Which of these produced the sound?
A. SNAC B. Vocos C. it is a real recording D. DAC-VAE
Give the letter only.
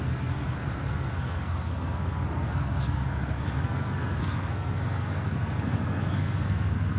A